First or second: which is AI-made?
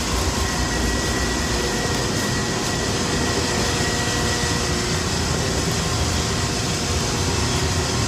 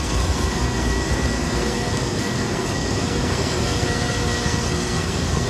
second